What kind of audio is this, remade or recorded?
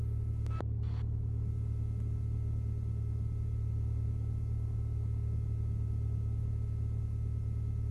recorded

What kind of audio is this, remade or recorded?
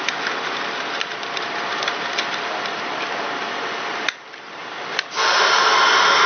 remade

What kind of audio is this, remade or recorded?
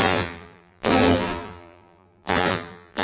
remade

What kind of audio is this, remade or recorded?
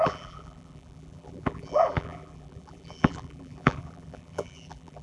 remade